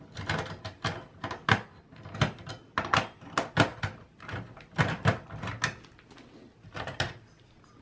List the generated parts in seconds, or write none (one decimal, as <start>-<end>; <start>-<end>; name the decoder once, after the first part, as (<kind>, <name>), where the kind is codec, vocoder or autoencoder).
none